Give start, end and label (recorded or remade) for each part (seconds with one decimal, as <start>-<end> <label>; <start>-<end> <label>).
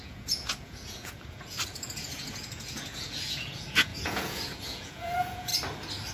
0.0-5.5 remade; 5.5-6.1 recorded